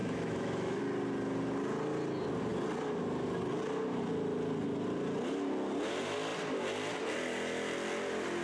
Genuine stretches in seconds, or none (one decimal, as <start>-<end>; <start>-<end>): 0.8-8.4